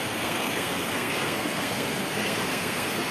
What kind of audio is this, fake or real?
fake